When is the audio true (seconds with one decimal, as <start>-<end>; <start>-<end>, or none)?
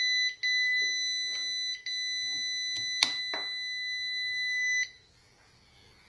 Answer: 0.0-6.1